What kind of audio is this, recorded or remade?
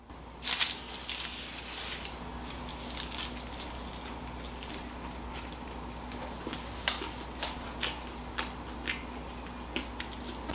recorded